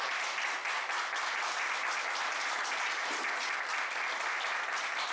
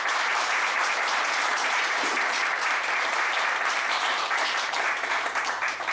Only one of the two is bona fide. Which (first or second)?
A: first